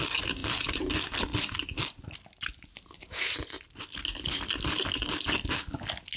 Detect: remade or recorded recorded